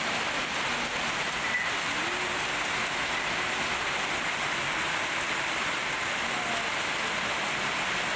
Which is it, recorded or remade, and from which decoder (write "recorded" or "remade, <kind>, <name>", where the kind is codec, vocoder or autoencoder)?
recorded